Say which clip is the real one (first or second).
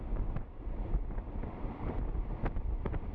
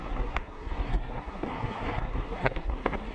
first